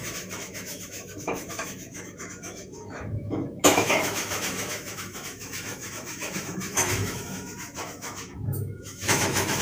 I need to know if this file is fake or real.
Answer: fake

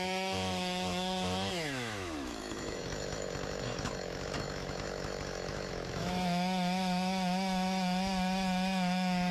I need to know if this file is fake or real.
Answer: fake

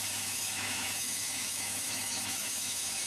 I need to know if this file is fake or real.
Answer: fake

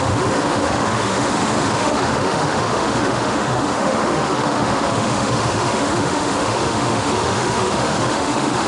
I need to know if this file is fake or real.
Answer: fake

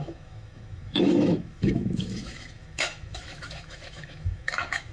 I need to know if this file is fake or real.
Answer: fake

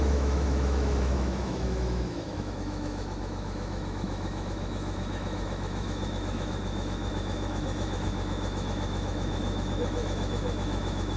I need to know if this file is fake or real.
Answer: fake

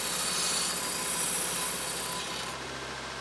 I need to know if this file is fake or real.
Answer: real